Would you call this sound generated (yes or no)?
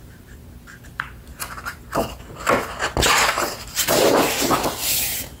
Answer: no